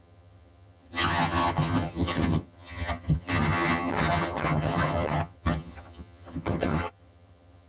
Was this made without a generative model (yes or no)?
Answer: no